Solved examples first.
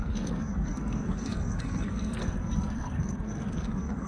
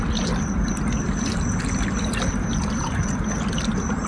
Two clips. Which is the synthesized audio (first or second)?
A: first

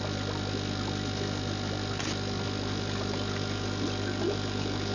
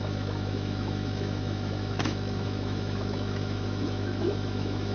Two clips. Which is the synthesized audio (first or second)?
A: second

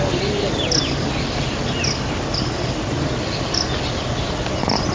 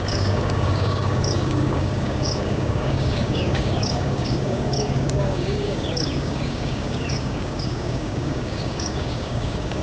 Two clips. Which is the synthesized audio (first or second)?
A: second